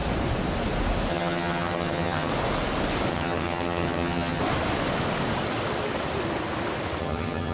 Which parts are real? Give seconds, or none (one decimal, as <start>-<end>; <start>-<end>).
0.0-1.1; 2.3-3.1; 4.4-7.0